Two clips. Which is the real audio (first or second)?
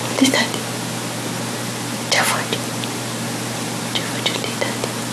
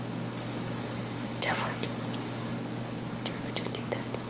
first